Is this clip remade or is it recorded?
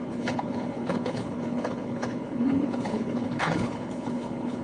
remade